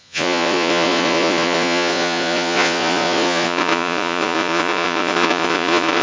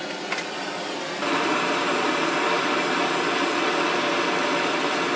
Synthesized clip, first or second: first